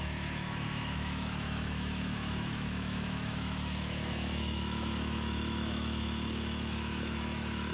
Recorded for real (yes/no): no